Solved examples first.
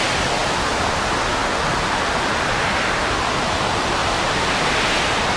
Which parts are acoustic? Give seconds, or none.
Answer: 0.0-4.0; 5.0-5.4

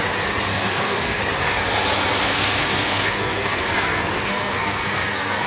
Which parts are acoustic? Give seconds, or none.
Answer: 0.0-0.5; 1.2-2.2

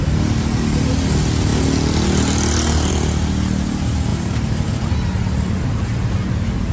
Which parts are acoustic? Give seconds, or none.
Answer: 0.0-4.1; 4.9-6.7